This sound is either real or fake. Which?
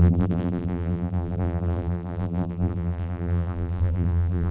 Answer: fake